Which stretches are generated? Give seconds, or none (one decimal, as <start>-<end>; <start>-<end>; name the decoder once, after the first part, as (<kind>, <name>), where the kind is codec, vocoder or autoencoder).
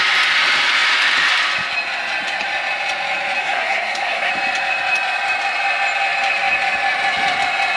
3.4-4.3 (codec, SNAC)